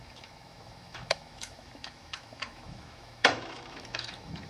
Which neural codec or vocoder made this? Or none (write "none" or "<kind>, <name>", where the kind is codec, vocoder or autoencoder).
autoencoder, DAC-VAE